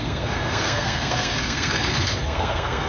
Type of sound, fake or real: fake